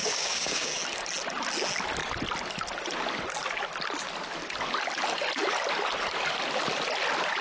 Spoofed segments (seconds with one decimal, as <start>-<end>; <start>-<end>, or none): 0.0-0.8